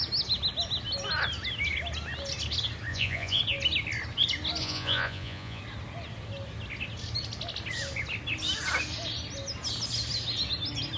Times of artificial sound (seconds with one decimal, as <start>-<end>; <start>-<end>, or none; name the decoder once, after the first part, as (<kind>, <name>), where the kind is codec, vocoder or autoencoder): 2.9-3.4 (vocoder, Vocos); 4.6-5.6